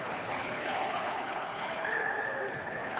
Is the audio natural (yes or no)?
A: no